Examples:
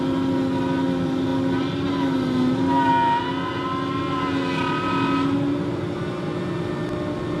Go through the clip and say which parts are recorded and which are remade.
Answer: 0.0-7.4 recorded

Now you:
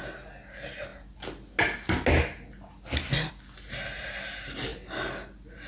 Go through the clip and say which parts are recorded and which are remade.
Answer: 0.0-5.7 recorded

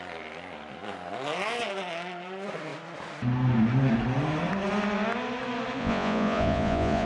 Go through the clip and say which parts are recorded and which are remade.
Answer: 0.0-5.8 recorded; 5.8-7.1 remade

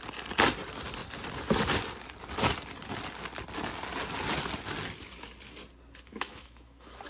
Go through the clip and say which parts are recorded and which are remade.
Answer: 0.0-6.1 recorded; 6.1-7.1 remade

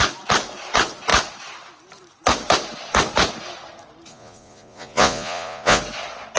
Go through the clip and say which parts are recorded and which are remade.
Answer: 0.0-4.1 recorded; 4.1-5.8 remade; 5.8-6.4 recorded